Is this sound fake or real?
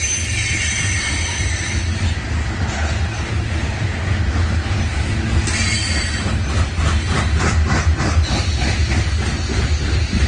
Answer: real